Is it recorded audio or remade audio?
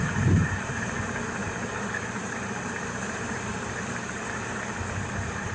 remade